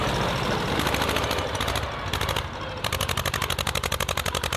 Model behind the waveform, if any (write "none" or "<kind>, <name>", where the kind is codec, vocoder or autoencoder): vocoder, BigVGAN v2